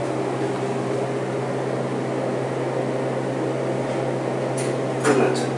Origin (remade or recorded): recorded